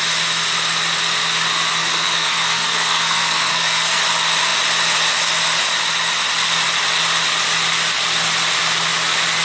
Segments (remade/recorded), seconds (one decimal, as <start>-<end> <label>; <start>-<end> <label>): 0.0-1.8 recorded; 1.8-4.0 remade; 4.0-9.4 recorded